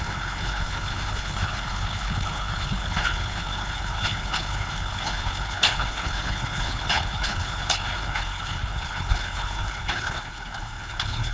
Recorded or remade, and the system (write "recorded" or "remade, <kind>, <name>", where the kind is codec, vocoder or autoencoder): remade, codec, HILCodec